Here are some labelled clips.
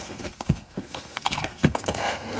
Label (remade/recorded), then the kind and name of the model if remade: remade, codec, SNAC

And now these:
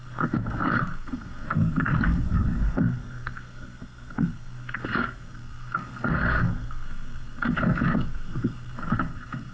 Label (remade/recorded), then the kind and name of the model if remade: remade, codec, SNAC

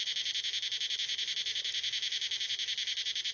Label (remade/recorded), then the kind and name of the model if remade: recorded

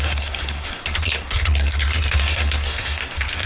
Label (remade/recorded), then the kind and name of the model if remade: remade, codec, SNAC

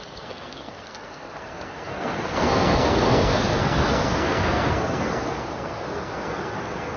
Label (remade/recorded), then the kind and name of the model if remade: remade, codec, SNAC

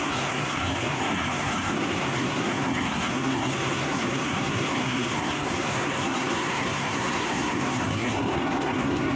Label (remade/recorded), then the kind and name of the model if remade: remade, codec, SNAC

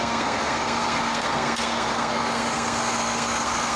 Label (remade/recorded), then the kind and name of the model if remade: remade, codec, SNAC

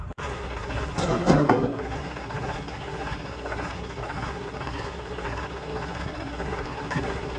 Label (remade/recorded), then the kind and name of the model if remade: remade, codec, SNAC